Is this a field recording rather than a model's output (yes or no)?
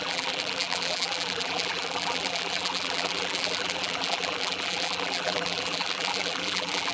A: no